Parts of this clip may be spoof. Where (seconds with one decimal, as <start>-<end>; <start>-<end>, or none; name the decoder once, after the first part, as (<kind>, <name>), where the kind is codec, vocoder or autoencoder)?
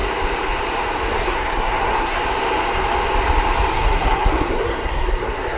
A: 1.1-2.2 (codec, SNAC); 3.7-5.6